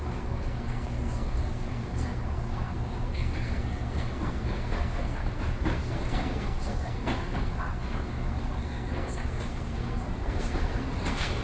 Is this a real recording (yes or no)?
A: no